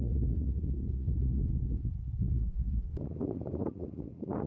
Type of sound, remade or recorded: remade